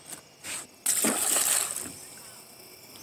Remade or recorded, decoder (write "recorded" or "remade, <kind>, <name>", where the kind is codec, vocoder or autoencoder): recorded